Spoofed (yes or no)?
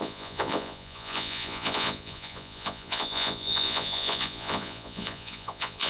yes